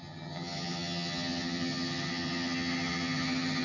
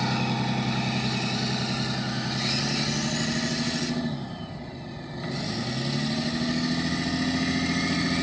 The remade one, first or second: first